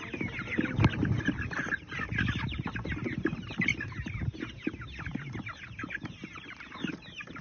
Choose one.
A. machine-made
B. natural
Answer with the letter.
B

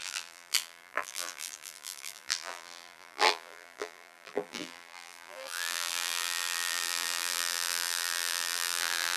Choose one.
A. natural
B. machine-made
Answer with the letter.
B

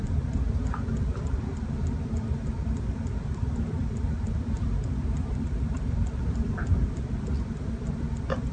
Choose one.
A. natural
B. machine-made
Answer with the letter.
B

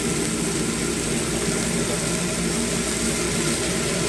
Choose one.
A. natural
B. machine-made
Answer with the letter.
A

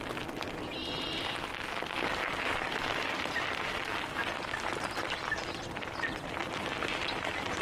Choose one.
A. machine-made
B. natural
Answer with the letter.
A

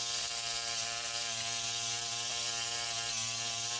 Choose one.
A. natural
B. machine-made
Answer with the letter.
A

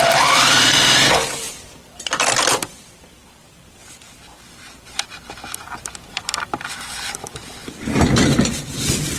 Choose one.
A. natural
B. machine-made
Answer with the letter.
B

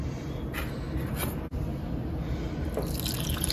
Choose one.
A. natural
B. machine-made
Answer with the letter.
A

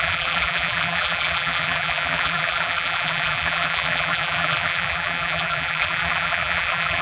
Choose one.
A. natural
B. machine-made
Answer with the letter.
B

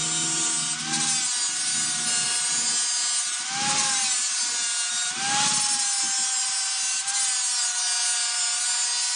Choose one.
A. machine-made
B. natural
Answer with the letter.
B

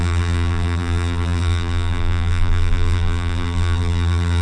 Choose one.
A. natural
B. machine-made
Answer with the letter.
B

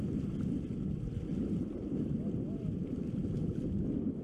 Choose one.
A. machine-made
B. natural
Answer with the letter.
B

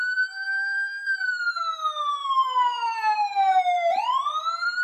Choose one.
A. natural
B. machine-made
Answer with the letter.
B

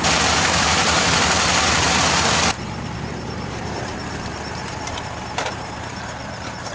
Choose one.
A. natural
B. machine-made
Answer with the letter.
B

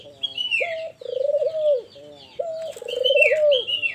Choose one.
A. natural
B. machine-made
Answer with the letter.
A